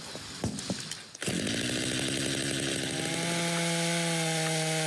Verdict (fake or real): real